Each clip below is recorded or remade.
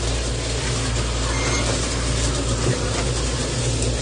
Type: recorded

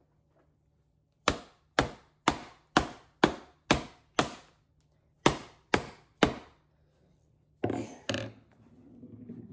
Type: recorded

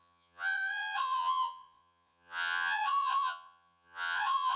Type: remade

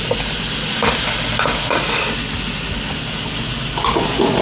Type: recorded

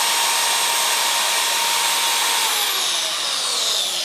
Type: recorded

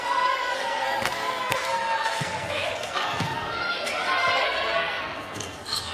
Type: remade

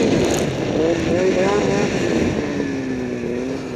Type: recorded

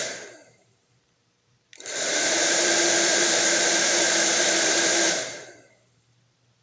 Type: remade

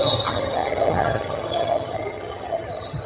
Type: remade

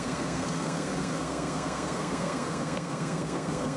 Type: remade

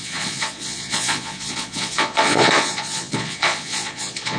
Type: remade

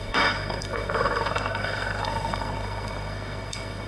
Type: remade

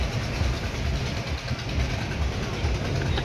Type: recorded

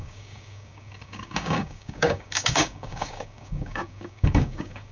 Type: remade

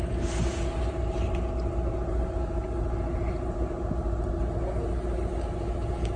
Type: recorded